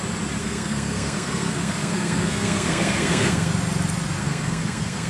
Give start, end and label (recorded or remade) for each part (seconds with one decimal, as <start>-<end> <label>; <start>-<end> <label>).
0.0-0.4 recorded; 0.4-3.5 remade; 3.5-4.2 recorded; 4.2-5.1 remade